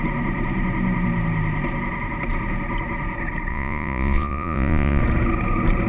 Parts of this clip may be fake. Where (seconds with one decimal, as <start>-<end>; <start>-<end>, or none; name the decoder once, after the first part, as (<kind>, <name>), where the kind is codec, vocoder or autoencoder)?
3.5-5.0 (vocoder, Vocos)